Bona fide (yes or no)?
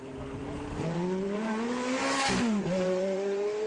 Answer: no